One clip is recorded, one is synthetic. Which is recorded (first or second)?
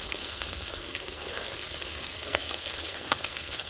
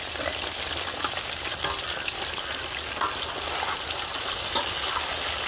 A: second